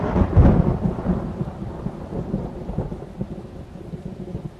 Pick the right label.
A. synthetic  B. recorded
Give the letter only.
B